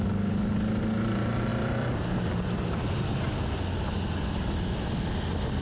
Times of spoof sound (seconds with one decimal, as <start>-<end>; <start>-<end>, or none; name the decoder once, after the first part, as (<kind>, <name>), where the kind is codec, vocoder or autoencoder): none